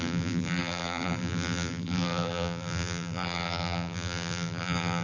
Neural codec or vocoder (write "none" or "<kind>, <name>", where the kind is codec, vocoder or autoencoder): vocoder, BigVGAN v2